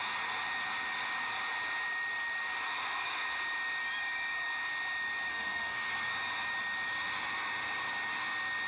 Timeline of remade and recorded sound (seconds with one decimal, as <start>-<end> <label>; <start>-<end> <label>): 0.0-5.3 recorded; 5.3-6.1 remade; 6.1-8.7 recorded